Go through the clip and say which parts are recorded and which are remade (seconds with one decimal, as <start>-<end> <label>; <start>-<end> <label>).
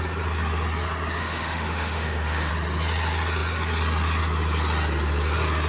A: 0.0-1.2 recorded; 1.2-2.5 remade; 2.5-5.7 recorded